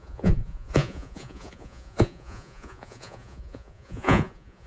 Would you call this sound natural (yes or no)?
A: no